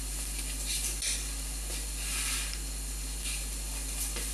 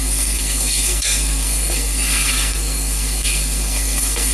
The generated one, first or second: second